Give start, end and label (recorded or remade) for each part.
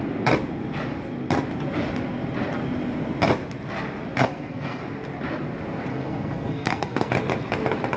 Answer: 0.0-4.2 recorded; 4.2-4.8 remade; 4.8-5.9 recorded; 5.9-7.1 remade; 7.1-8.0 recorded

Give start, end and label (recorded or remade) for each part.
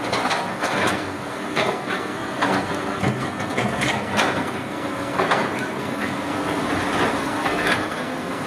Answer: 0.0-6.6 remade; 6.6-7.2 recorded; 7.2-8.5 remade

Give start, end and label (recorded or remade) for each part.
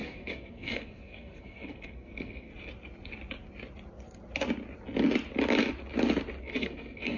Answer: 0.0-2.5 remade; 2.5-6.4 recorded; 6.4-7.2 remade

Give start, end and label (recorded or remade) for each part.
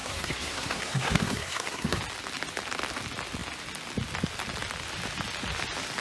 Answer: 0.0-2.0 remade; 2.0-6.0 recorded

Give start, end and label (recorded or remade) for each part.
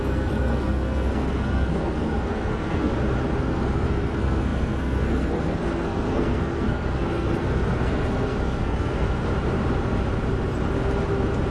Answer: 0.0-2.9 remade; 2.9-3.4 recorded; 3.4-9.2 remade; 9.2-11.5 recorded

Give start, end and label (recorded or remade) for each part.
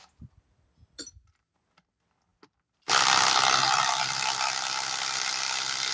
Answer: 0.0-5.9 recorded